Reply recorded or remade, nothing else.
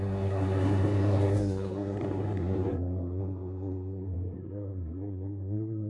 remade